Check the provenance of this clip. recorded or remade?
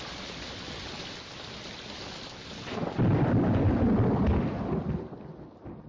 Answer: recorded